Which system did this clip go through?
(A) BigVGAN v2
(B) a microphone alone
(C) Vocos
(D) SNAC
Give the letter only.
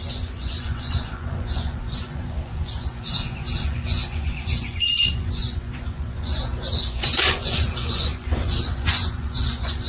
C